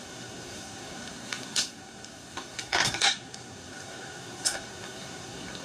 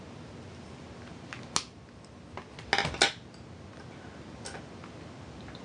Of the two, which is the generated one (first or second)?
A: first